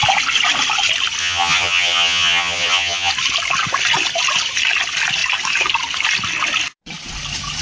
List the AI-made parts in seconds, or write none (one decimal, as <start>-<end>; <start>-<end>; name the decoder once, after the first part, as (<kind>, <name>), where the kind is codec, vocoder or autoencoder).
1.2-3.1 (vocoder, HiFi-GAN)